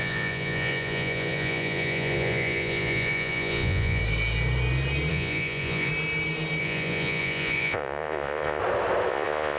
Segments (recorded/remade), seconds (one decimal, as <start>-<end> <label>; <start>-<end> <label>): 0.0-4.0 remade; 4.0-5.1 recorded; 5.1-5.9 remade; 5.9-6.6 recorded; 6.6-8.6 remade; 8.6-9.1 recorded; 9.1-9.6 remade